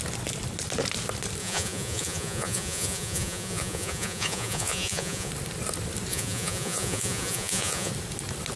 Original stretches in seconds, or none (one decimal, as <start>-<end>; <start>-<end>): 0.0-1.4; 5.3-6.1; 7.9-8.6